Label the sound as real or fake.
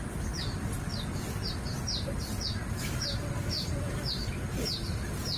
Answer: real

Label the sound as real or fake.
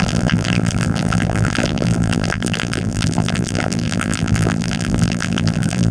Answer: fake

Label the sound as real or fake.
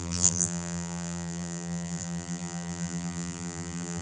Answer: fake